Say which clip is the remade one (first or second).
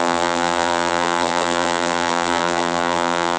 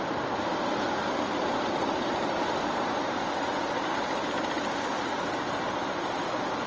first